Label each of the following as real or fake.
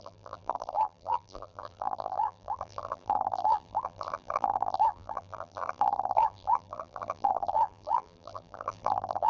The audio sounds fake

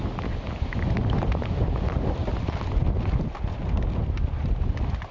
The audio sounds real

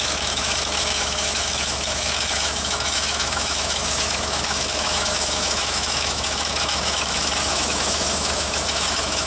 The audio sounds fake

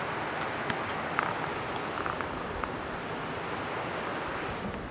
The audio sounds real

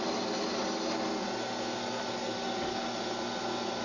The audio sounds real